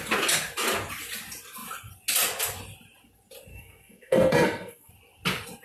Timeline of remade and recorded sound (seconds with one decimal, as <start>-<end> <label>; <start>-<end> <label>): 0.0-3.5 recorded; 3.5-4.9 remade; 4.9-5.6 recorded